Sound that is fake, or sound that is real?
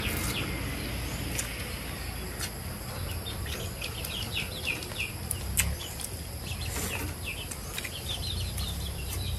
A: real